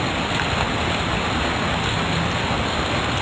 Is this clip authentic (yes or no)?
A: yes